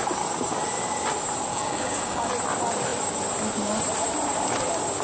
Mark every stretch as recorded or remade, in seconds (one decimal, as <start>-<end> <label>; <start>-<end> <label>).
0.0-1.5 recorded; 1.5-2.3 remade; 2.3-5.0 recorded